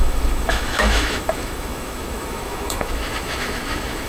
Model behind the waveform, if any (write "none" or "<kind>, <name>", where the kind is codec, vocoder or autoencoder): autoencoder, DAC-VAE